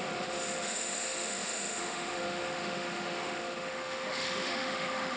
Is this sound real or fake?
fake